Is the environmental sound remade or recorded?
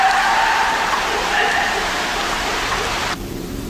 remade